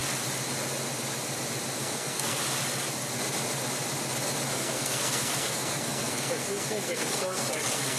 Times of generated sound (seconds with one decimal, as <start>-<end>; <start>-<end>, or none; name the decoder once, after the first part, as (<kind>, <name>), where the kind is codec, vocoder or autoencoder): 1.8-2.4 (codec, SNAC); 4.5-8.0